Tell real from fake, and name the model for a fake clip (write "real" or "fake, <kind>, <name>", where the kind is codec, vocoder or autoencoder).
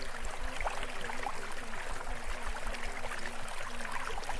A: real